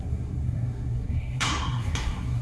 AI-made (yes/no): yes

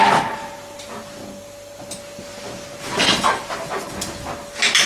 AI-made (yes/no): no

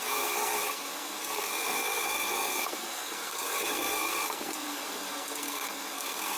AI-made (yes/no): yes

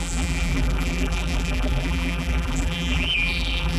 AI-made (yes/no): yes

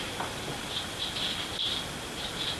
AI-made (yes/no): no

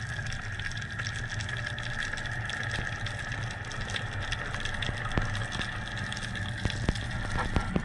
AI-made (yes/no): no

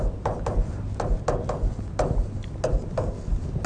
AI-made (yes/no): no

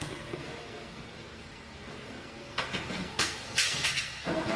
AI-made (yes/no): yes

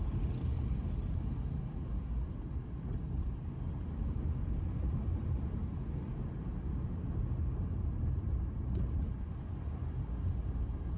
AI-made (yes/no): no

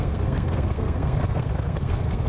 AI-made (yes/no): yes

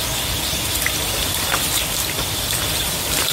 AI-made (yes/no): no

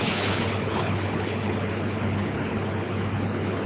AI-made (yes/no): yes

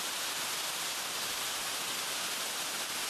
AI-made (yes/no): no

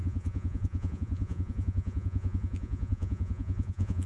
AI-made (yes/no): yes